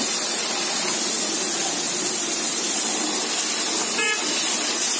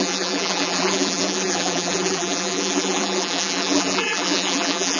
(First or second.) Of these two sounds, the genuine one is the first